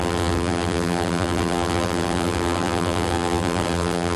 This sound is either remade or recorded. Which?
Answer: remade